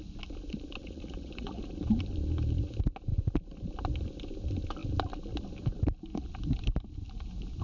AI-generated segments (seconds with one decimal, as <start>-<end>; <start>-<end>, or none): 0.8-1.6